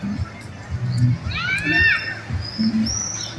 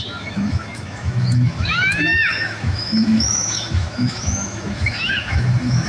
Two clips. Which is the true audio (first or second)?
first